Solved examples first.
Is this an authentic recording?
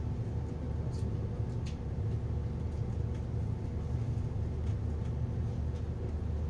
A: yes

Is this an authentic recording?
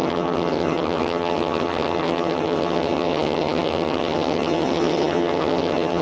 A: no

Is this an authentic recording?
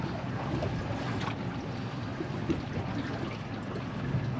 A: yes